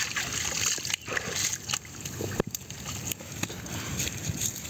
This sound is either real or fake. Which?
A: real